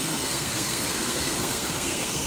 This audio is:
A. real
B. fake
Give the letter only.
B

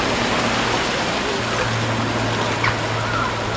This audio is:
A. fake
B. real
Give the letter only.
B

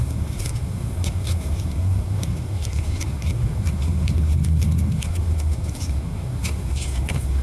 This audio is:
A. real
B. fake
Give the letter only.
B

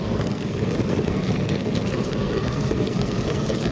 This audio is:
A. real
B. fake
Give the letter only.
B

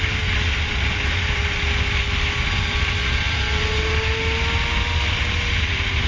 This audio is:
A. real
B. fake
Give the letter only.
A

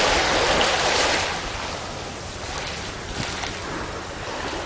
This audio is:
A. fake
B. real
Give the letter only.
B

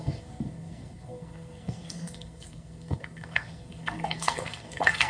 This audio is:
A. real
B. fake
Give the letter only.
B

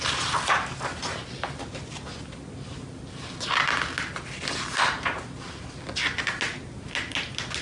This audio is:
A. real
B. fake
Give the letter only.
A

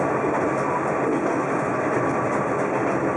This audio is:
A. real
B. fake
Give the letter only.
A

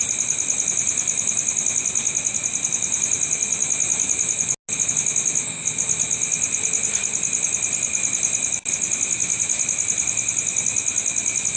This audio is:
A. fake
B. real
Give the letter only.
B